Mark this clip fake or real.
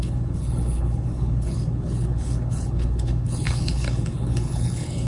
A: fake